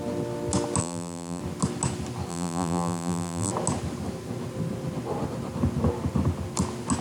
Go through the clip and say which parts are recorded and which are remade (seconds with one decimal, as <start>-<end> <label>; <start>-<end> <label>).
0.0-0.8 recorded; 0.8-1.4 remade; 1.4-2.3 recorded; 2.3-3.5 remade; 3.5-7.0 recorded